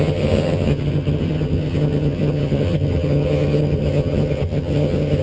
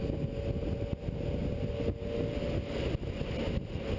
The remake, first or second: first